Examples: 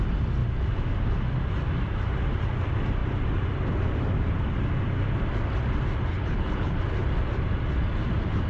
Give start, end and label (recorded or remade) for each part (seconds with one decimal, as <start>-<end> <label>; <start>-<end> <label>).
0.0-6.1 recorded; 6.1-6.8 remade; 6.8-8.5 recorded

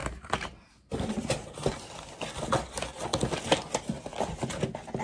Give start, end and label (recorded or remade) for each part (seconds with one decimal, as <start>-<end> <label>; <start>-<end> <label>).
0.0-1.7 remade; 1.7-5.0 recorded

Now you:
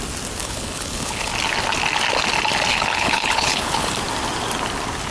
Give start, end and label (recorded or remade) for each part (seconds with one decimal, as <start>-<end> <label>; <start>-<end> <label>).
0.0-0.4 recorded; 0.4-1.3 remade; 1.3-2.7 recorded; 2.7-3.9 remade; 3.9-5.1 recorded